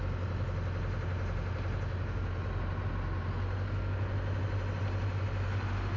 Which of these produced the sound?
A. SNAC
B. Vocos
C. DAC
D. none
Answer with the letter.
D